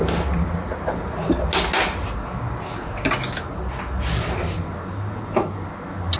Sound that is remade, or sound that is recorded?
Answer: recorded